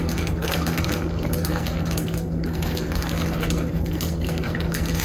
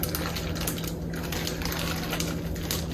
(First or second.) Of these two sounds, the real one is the second